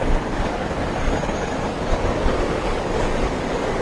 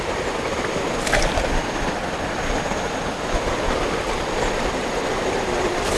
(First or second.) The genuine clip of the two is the second